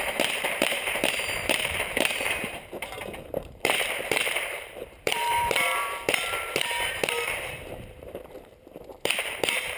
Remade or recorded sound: remade